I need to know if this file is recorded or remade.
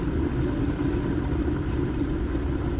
recorded